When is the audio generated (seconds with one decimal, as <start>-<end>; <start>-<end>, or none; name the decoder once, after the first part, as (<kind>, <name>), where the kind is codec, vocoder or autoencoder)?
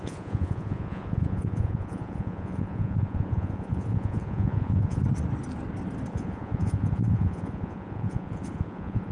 0.0-5.0 (vocoder, Vocos); 6.1-9.1